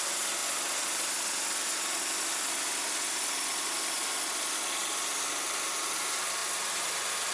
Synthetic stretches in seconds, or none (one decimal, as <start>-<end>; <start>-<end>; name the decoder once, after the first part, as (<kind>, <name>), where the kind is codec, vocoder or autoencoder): none